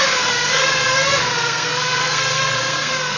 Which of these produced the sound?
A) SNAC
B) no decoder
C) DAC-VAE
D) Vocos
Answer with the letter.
A